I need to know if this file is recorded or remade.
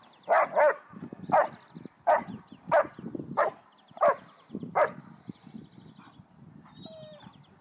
recorded